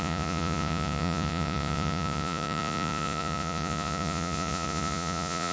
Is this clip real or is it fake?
fake